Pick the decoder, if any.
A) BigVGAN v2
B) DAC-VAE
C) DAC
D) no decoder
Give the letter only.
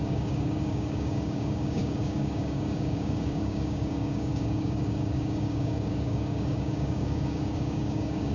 C